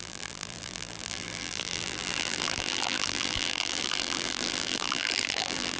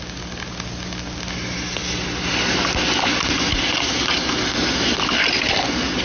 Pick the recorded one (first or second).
second